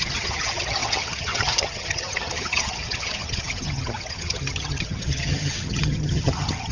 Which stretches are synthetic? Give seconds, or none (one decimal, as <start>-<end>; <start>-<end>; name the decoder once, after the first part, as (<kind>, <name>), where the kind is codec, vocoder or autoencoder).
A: 0.0-6.7 (vocoder, HiFi-GAN)